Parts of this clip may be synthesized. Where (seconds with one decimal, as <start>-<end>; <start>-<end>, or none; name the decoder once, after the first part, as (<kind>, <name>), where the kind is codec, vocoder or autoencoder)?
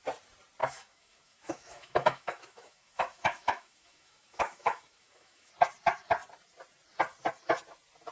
0.6-5.5 (autoencoder, DAC-VAE)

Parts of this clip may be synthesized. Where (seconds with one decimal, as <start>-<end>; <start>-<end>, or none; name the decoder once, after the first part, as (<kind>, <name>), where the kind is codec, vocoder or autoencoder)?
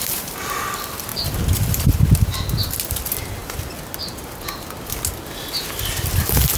none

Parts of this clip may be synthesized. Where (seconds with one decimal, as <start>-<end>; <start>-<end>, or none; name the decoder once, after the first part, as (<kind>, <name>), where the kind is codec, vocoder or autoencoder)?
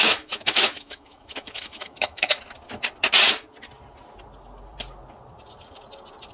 0.0-2.4 (autoencoder, DAC-VAE)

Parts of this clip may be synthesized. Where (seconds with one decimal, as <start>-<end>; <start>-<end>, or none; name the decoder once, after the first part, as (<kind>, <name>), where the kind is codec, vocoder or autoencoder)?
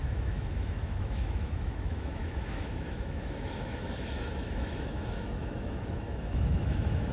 0.0-7.1 (autoencoder, DAC-VAE)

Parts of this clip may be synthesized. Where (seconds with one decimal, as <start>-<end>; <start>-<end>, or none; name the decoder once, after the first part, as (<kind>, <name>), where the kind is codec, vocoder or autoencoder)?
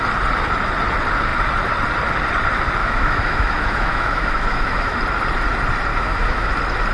2.8-5.0 (autoencoder, DAC-VAE); 5.9-6.5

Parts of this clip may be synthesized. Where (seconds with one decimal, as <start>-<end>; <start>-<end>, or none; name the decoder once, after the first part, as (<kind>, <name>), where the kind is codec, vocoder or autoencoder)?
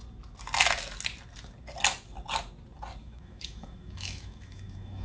3.0-5.0 (autoencoder, DAC-VAE)